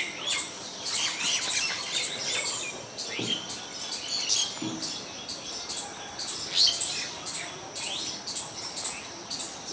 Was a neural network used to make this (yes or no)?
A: no